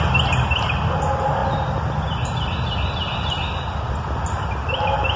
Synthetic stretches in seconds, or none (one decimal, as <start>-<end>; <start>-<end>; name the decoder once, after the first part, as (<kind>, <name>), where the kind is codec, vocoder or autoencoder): none